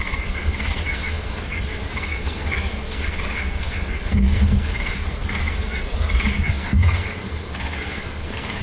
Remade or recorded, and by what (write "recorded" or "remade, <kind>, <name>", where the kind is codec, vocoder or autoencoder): remade, codec, SNAC